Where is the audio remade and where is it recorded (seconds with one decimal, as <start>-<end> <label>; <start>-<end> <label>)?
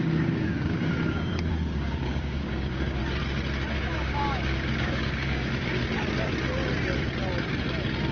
0.0-3.0 remade; 3.0-3.7 recorded; 3.7-5.8 remade; 5.8-8.1 recorded